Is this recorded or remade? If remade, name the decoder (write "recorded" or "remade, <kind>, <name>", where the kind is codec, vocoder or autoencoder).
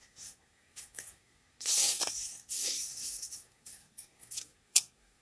remade, codec, SNAC